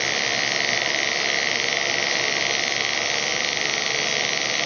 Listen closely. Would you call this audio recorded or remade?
recorded